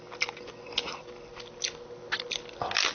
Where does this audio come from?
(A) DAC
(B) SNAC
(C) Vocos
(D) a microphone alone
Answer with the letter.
D